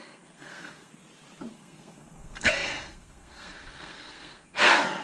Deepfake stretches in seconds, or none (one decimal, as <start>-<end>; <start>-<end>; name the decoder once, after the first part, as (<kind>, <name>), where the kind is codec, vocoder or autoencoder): 0.0-0.9 (codec, SNAC); 1.5-5.0